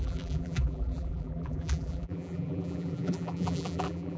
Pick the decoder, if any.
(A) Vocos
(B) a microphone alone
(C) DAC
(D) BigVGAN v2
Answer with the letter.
D